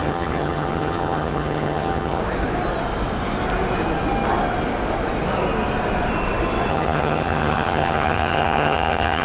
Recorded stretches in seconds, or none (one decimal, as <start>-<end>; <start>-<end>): 2.2-6.7